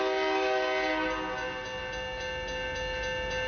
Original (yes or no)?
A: yes